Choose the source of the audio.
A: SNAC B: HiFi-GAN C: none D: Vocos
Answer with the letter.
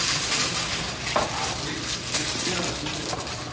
C